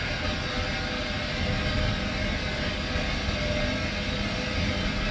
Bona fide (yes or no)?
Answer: yes